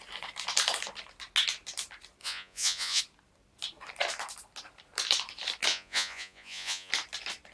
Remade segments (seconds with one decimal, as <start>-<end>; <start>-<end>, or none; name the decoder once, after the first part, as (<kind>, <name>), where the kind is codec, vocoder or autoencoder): 2.2-3.0 (vocoder, Vocos); 5.7-6.9